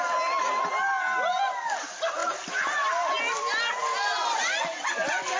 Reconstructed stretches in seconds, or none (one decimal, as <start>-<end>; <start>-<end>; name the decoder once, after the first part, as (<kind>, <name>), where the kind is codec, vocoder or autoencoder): none